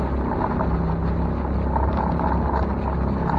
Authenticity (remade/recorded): recorded